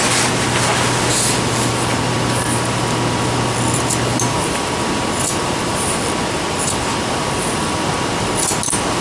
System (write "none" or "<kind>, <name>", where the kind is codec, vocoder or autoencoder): none